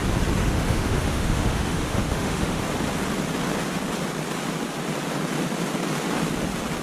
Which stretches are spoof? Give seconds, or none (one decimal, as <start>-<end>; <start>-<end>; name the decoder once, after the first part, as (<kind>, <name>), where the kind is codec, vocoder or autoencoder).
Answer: 0.4-2.6 (autoencoder, DAC-VAE)